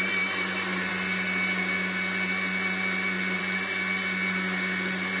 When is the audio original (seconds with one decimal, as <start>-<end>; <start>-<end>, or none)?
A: 0.0-5.2